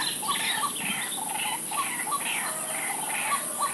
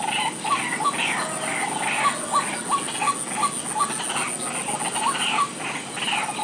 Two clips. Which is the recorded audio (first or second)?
second